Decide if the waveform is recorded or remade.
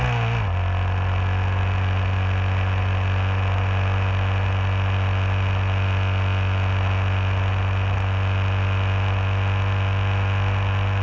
recorded